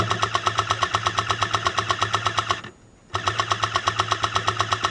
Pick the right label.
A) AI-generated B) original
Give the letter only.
B